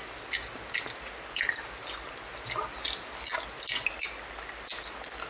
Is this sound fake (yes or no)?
no